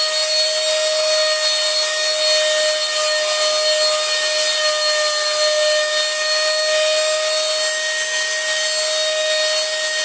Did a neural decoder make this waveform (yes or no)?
no